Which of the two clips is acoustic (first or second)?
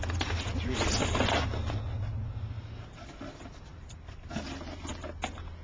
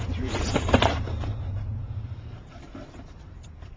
first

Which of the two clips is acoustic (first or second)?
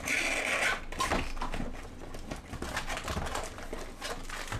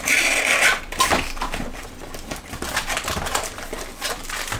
first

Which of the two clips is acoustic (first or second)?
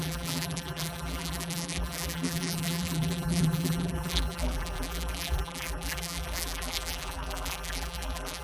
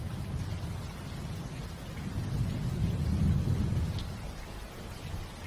second